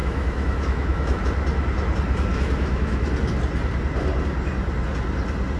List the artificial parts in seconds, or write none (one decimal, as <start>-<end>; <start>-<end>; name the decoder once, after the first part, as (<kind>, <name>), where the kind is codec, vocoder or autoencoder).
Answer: 0.0-1.2 (autoencoder, DAC-VAE); 2.3-3.1

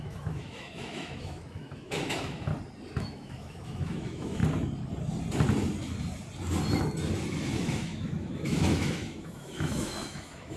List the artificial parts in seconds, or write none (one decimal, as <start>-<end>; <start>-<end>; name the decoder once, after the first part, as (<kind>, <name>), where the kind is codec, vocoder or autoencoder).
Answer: 0.0-2.5 (autoencoder, DAC-VAE); 3.0-4.4; 7.5-10.6

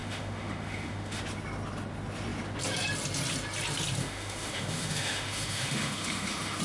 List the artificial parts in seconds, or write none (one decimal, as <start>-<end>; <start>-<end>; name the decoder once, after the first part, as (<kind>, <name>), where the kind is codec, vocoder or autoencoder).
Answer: 0.0-1.2 (autoencoder, DAC-VAE); 4.0-6.6

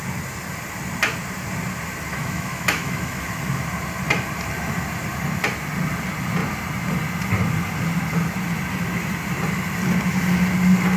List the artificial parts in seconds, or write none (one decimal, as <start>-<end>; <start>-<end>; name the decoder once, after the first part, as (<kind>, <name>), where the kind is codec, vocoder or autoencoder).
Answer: 2.1-3.6 (autoencoder, DAC-VAE)

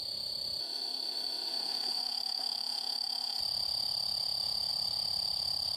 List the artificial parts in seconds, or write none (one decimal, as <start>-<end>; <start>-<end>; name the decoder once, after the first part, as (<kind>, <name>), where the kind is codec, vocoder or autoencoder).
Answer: 0.6-3.4 (autoencoder, DAC-VAE)

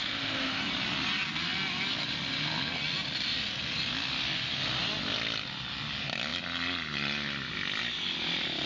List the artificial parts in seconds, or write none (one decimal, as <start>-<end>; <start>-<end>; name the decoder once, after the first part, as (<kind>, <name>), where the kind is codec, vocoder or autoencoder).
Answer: 0.0-0.6 (autoencoder, DAC-VAE)

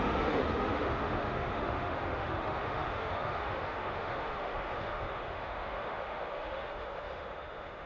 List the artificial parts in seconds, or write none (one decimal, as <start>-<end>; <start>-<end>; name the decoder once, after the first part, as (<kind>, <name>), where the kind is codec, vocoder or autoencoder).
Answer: 0.0-7.9 (autoencoder, DAC-VAE)

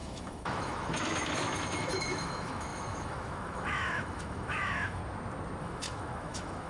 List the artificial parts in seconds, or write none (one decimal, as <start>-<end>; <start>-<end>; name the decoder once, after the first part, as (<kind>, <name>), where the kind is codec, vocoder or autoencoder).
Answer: 0.0-5.0 (autoencoder, DAC-VAE); 5.6-6.7